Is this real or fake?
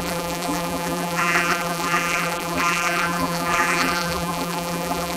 fake